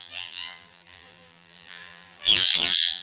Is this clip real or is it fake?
fake